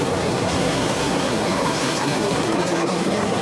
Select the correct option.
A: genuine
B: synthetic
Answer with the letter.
B